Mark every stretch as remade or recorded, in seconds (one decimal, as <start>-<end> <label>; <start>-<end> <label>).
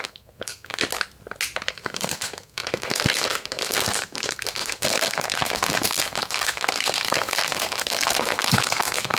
0.0-0.8 remade; 0.8-1.7 recorded; 1.7-9.2 remade